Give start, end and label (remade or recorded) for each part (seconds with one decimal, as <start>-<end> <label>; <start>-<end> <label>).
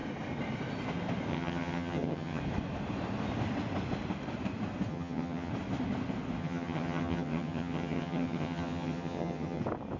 0.0-1.3 recorded; 1.3-2.4 remade; 2.4-4.9 recorded; 4.9-5.5 remade; 5.5-6.4 recorded; 6.4-9.6 remade; 9.6-10.0 recorded